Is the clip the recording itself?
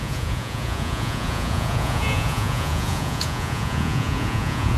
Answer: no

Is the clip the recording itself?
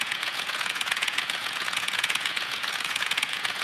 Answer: no